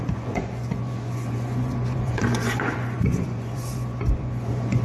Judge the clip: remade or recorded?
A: remade